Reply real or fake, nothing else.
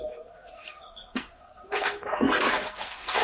fake